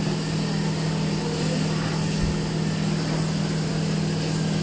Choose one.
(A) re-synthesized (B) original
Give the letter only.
B